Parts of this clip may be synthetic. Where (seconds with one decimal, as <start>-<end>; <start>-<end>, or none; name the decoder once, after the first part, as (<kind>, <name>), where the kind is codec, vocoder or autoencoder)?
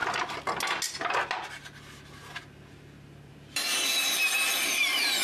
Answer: 3.1-5.2 (vocoder, BigVGAN v2)